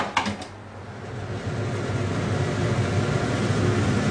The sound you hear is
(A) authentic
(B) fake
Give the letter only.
A